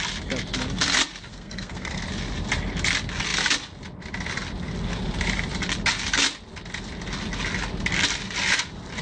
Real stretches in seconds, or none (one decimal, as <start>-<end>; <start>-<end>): 0.0-1.3; 2.0-9.0